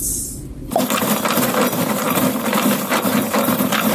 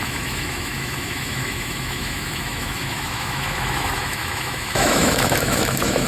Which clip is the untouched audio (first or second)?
first